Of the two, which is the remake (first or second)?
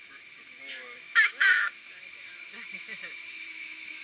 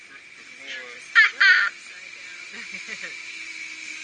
first